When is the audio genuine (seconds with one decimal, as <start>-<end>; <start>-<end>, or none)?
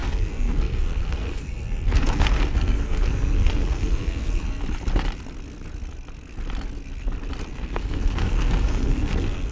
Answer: 4.6-7.5